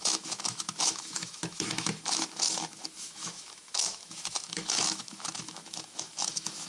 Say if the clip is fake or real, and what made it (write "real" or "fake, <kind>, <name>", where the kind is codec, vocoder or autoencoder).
fake, autoencoder, DAC-VAE